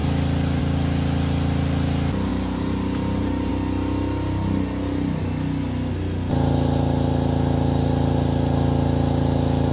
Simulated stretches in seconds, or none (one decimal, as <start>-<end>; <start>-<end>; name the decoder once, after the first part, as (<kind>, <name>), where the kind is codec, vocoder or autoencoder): 2.3-3.5 (vocoder, BigVGAN v2)